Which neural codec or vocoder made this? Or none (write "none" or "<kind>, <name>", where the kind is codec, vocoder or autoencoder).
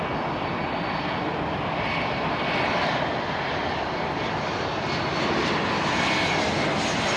none